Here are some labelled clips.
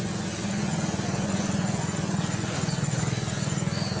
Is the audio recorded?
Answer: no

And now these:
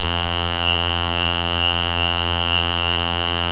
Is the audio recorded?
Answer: no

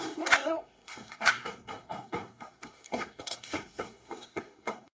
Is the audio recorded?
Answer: no